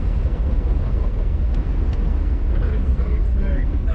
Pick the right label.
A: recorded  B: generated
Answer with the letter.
B